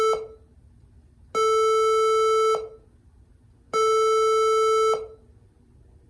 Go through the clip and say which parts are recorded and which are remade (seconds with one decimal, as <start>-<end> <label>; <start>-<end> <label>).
0.0-6.1 recorded